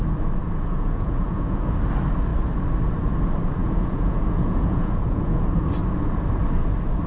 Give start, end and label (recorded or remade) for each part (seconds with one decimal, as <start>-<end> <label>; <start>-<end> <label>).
0.0-0.4 recorded; 0.4-1.6 remade; 1.6-3.6 recorded; 3.6-5.4 remade; 5.4-7.1 recorded